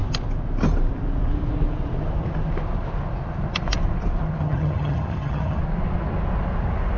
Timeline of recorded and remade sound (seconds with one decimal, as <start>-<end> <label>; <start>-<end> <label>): 0.0-4.4 recorded; 4.4-5.6 remade; 5.6-7.0 recorded